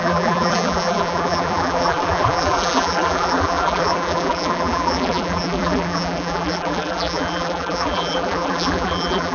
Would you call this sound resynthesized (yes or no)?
yes